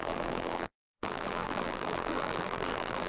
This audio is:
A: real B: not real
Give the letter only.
B